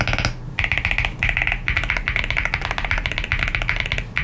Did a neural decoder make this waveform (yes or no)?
no